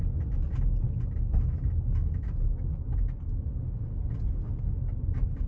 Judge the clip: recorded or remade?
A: recorded